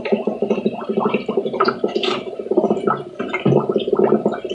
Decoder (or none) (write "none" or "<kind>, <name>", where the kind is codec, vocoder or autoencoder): vocoder, BigVGAN v2